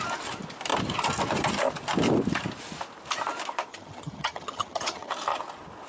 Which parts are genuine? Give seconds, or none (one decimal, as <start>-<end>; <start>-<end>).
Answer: 0.0-3.7; 5.1-5.9

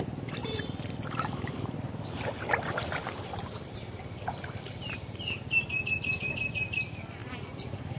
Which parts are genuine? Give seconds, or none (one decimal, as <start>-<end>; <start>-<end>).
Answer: 0.0-0.4; 4.6-8.0

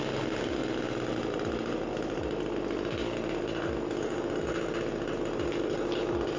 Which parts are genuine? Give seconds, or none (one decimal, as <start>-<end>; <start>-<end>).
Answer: 0.0-6.4

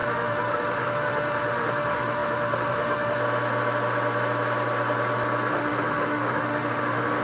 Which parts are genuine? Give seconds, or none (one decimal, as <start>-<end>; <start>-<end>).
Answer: 3.2-5.5

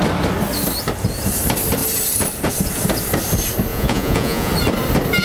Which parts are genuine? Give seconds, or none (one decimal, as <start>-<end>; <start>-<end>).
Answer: 0.0-3.7; 4.5-5.2

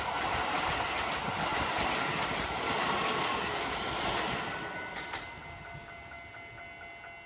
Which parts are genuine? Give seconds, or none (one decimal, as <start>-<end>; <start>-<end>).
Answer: 0.0-7.3

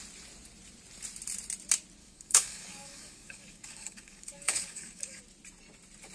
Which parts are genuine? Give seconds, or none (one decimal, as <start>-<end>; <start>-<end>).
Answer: 0.0-2.0; 5.2-6.1